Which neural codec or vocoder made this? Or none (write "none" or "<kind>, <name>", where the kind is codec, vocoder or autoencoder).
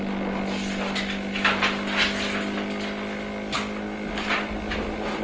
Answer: none